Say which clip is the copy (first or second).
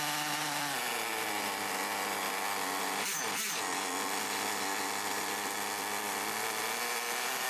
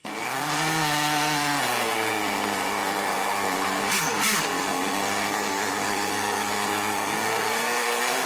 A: second